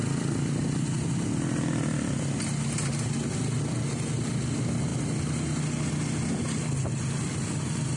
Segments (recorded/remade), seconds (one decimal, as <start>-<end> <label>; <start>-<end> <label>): 0.0-8.0 recorded